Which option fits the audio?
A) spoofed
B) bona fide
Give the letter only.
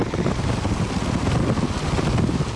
B